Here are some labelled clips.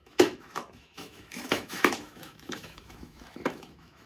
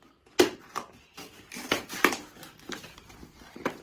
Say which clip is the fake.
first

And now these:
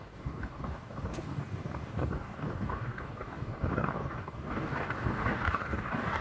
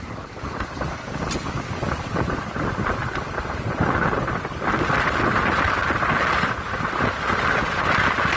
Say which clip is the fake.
first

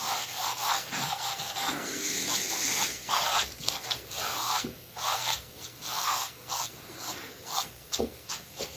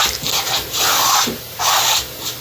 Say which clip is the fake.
first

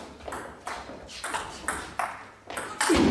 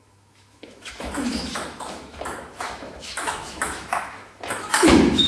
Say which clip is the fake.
second